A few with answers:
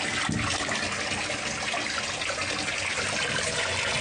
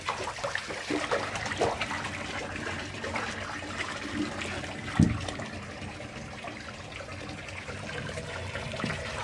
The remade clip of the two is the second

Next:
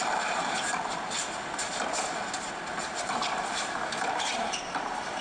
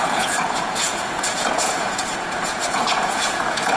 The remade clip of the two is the second